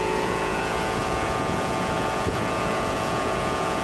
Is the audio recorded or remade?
remade